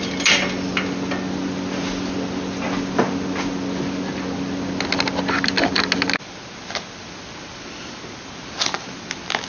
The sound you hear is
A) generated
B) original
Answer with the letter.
B